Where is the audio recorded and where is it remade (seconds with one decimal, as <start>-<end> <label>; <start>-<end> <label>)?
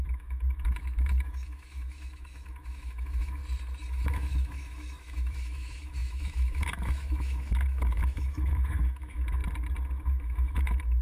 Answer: 0.0-3.4 remade; 3.4-3.9 recorded; 3.9-9.4 remade; 9.4-9.9 recorded; 9.9-11.0 remade